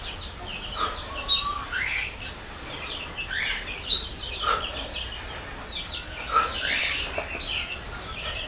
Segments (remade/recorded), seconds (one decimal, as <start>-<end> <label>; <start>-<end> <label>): 0.0-0.5 recorded; 0.5-4.7 remade; 4.7-8.5 recorded